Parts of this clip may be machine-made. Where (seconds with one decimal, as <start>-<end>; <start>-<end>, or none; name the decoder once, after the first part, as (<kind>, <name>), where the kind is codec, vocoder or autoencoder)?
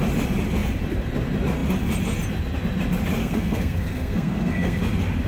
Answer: 3.2-4.8 (codec, SNAC)